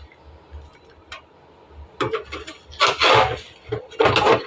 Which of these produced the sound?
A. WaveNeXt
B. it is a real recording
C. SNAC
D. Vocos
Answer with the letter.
B